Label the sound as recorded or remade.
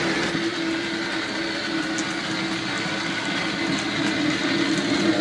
recorded